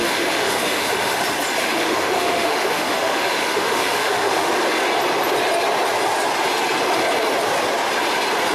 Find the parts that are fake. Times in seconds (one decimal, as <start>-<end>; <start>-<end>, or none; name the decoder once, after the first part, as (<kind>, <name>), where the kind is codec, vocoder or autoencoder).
0.0-1.2 (autoencoder, DAC-VAE); 1.6-4.5